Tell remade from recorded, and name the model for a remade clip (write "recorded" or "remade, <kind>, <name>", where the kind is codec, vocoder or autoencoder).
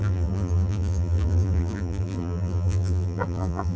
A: remade, vocoder, BigVGAN v2